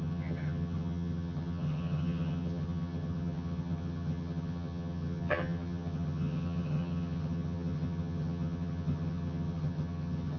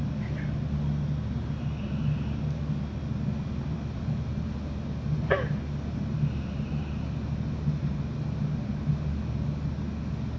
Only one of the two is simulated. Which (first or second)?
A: first